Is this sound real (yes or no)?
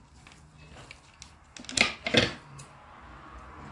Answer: yes